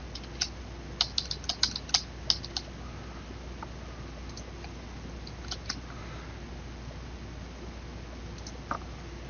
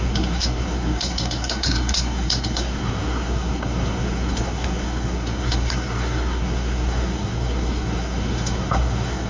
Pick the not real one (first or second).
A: second